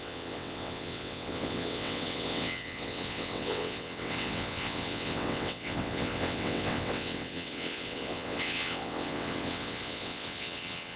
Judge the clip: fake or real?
fake